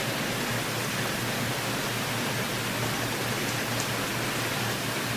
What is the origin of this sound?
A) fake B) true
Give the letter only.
B